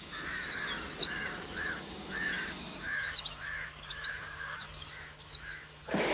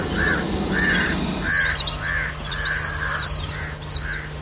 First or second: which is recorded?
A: second